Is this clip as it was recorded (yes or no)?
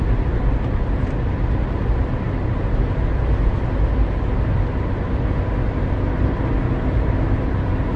yes